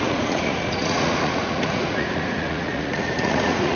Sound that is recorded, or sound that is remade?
remade